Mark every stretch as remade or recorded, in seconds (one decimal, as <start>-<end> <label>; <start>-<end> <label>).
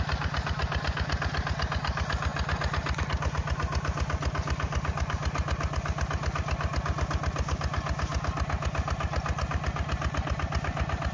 0.0-11.1 recorded